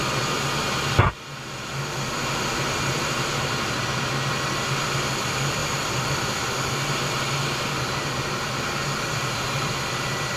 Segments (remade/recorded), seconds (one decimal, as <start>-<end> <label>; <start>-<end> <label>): 0.0-5.6 recorded; 5.6-6.4 remade; 6.4-10.4 recorded